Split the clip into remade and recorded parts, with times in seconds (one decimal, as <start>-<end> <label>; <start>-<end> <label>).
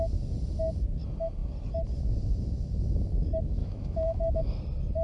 0.0-3.6 recorded; 3.6-4.6 remade; 4.6-5.0 recorded